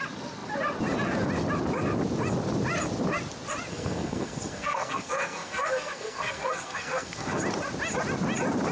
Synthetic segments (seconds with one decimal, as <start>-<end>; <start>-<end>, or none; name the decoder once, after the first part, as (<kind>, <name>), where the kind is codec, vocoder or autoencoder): 3.7-7.4 (codec, SNAC)